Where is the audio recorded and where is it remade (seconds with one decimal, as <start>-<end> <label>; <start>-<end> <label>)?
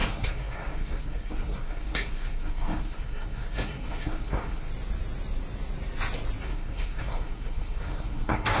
0.0-4.7 remade; 4.7-6.5 recorded; 6.5-8.6 remade